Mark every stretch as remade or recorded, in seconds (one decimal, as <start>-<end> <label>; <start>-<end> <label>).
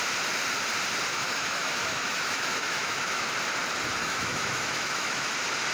0.0-1.1 recorded; 1.1-3.3 remade; 3.3-4.0 recorded; 4.0-5.3 remade; 5.3-5.7 recorded